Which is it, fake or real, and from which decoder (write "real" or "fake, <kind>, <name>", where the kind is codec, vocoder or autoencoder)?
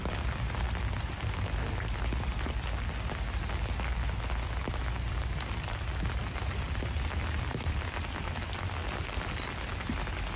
real